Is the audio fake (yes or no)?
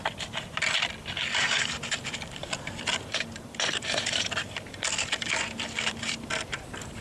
yes